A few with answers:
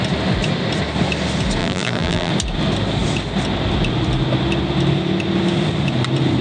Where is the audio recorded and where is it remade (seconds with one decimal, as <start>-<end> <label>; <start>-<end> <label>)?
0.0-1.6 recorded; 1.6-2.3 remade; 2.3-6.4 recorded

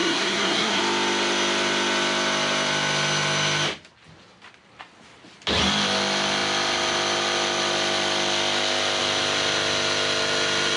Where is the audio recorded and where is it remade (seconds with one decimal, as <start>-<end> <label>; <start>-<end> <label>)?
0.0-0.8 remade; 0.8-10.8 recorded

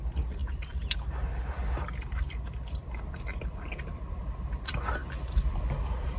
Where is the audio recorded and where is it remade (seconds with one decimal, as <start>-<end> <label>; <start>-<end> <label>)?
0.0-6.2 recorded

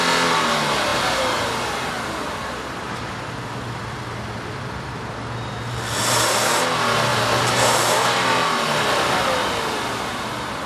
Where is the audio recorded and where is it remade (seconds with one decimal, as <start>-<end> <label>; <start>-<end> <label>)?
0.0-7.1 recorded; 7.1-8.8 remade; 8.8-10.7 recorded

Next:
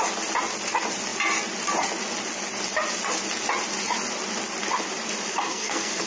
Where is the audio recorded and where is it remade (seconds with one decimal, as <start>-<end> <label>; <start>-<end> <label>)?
0.0-5.3 recorded; 5.3-6.1 remade

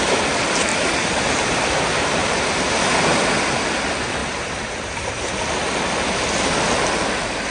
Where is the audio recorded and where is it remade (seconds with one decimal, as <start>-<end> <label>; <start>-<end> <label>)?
0.0-0.7 recorded; 0.7-1.8 remade; 1.8-2.2 recorded; 2.2-2.8 remade; 2.8-4.2 recorded; 4.2-5.4 remade; 5.4-7.5 recorded